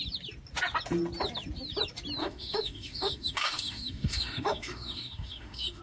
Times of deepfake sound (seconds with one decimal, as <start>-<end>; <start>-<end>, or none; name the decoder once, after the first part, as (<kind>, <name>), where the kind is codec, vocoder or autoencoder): 2.2-5.8 (autoencoder, DAC-VAE)